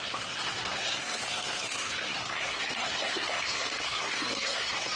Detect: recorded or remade remade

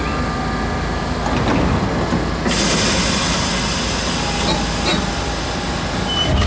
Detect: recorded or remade recorded